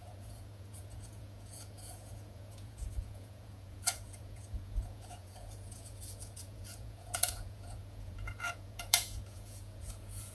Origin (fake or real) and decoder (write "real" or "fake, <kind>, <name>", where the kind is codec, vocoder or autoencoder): fake, vocoder, Vocos